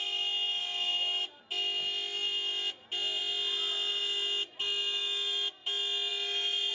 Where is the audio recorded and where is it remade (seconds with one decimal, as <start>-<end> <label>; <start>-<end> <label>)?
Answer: 0.0-6.7 recorded